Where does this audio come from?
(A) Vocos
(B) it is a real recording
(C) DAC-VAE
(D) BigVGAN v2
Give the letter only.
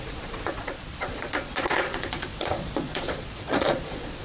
A